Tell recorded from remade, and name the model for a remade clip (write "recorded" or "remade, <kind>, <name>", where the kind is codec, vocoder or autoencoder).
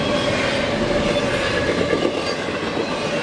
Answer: recorded